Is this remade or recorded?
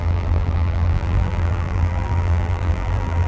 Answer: remade